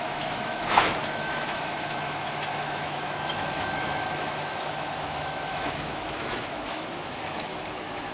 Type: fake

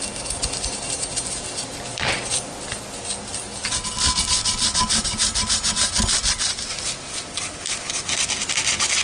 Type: real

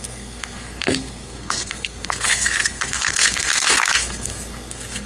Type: fake